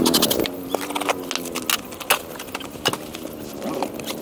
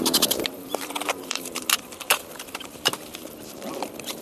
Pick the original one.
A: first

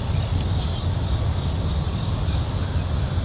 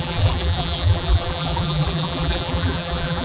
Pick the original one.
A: first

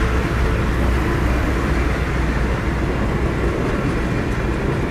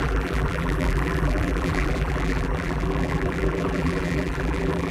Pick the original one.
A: first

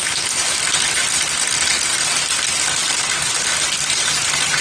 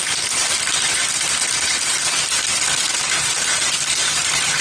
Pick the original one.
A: first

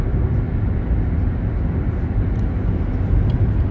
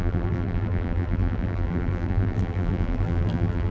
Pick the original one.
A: first